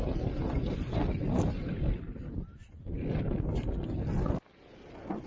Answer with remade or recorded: recorded